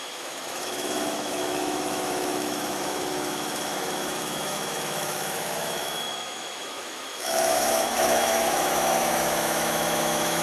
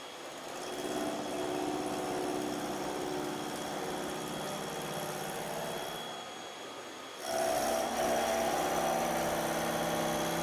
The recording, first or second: second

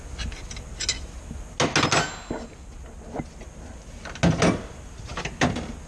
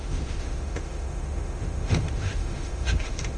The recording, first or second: first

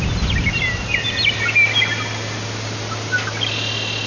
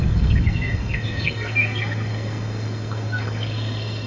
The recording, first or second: first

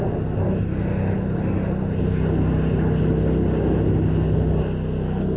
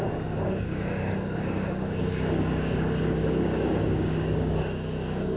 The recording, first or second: first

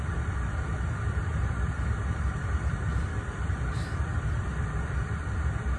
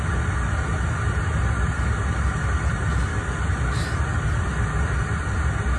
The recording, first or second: second